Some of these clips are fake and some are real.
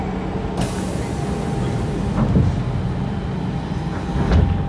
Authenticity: real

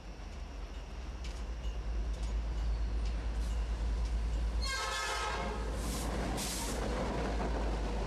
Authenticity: real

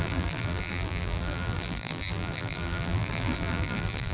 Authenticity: fake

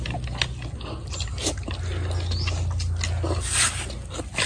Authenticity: real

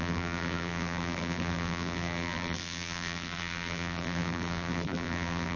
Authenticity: fake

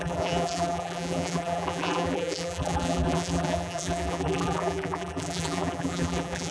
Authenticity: fake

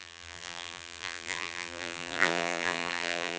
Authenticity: fake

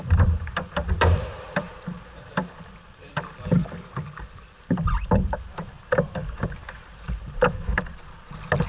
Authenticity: fake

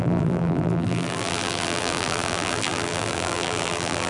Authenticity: fake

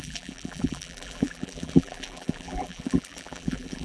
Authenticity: fake